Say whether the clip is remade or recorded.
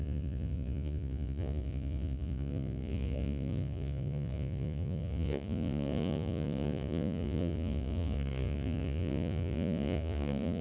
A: remade